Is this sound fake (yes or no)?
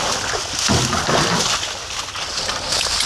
no